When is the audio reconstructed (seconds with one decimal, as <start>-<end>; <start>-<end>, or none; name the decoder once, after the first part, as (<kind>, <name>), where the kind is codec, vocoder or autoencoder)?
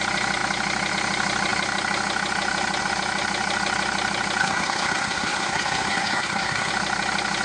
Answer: 4.4-6.7 (codec, SNAC)